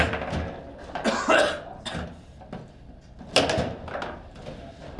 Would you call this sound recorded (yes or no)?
yes